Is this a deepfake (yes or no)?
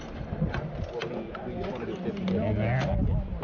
no